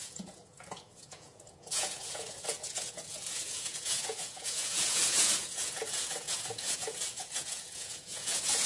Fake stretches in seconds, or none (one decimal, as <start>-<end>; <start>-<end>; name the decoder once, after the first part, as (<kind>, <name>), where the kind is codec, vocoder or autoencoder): 0.0-8.7 (vocoder, Vocos)

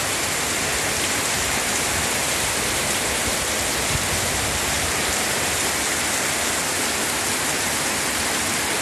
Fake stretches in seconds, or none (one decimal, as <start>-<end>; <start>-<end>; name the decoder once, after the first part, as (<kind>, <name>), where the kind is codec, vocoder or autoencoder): none

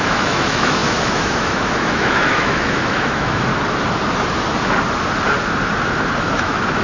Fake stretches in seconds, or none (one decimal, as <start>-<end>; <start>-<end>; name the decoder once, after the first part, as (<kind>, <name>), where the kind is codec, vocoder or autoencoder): 0.0-3.5 (autoencoder, DAC-VAE); 6.2-6.8

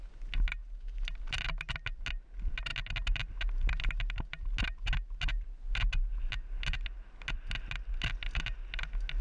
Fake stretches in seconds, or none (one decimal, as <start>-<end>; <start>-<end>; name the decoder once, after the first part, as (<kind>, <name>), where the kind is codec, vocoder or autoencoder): none

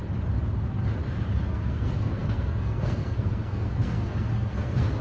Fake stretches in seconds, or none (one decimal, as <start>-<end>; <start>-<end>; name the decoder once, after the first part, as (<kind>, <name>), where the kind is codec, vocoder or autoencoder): 1.4-5.0 (codec, SNAC)

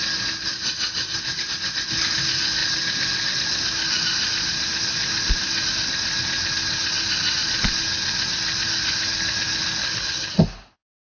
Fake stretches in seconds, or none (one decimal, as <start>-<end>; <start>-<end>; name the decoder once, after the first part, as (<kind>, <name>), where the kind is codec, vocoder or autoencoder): 9.8-10.3 (codec, HILCodec)

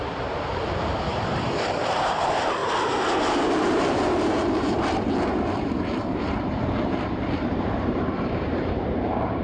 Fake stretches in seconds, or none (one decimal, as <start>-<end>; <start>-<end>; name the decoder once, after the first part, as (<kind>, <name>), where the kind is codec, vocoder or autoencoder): 0.0-2.6 (vocoder, BigVGAN v2); 3.6-9.4